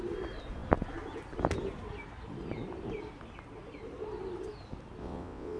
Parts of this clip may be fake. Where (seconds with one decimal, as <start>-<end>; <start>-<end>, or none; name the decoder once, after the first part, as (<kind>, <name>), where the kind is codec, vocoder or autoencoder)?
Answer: 5.0-5.6 (vocoder, WaveNeXt)